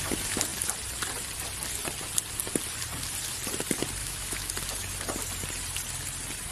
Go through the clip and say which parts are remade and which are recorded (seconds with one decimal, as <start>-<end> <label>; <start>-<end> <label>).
0.0-4.0 recorded; 4.0-4.5 remade; 4.5-6.5 recorded